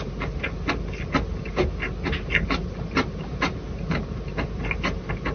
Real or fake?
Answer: real